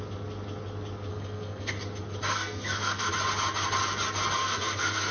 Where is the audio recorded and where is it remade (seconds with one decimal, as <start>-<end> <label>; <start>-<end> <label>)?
0.0-1.1 recorded; 1.1-1.7 remade; 1.7-2.3 recorded; 2.3-3.1 remade; 3.1-4.4 recorded; 4.4-5.1 remade